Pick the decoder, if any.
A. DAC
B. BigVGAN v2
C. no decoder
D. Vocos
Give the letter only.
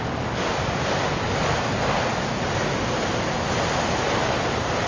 C